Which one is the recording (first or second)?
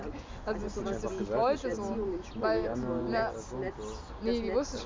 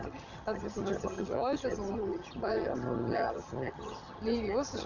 first